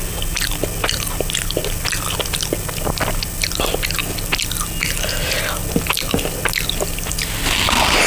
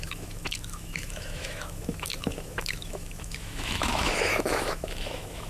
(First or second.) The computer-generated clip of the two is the second